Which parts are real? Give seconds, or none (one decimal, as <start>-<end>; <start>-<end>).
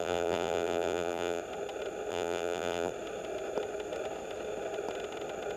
1.4-2.1; 2.9-5.6